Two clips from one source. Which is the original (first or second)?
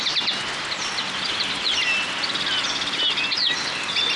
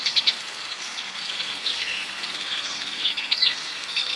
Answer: first